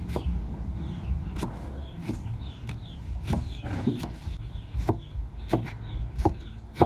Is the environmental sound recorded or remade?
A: remade